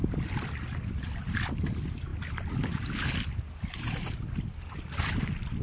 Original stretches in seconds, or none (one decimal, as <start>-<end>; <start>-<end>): 0.0-5.6

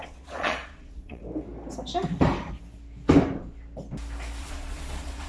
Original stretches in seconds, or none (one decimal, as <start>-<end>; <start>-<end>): 1.2-4.4

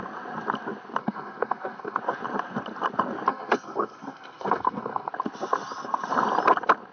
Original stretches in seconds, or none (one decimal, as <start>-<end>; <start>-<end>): 0.0-1.0; 2.0-3.3; 5.1-6.9

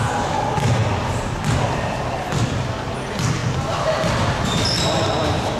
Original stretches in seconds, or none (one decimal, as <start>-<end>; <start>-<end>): 0.0-5.6

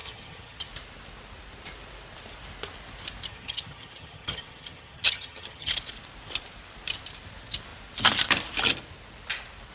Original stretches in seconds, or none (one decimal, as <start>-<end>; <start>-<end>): 0.7-3.3; 5.7-9.7